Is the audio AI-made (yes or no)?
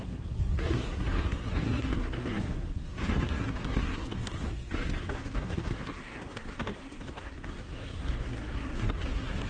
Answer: yes